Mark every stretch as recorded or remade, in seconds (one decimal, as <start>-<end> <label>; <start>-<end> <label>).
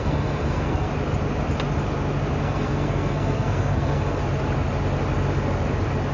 0.0-0.9 remade; 0.9-2.4 recorded; 2.4-4.2 remade; 4.2-6.1 recorded